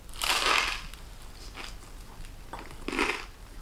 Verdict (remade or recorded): recorded